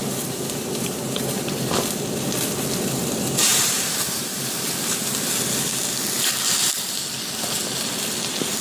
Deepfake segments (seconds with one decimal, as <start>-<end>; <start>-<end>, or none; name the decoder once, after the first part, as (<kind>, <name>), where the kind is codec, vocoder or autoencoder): 0.0-1.7 (vocoder, BigVGAN v2); 3.5-4.4